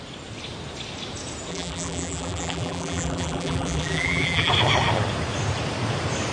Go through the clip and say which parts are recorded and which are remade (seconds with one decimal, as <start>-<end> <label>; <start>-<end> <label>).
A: 0.0-1.5 recorded; 1.5-4.5 remade; 4.5-6.3 recorded